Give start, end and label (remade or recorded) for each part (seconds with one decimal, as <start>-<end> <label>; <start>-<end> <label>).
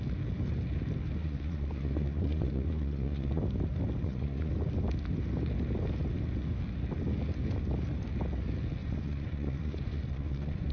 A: 0.0-1.2 recorded; 1.2-3.4 remade; 3.4-4.0 recorded; 4.0-4.5 remade; 4.5-8.8 recorded; 8.8-10.7 remade